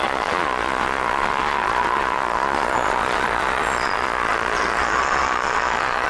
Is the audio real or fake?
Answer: fake